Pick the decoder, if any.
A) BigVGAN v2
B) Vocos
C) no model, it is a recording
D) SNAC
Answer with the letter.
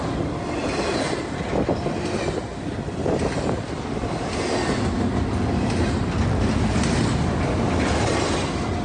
C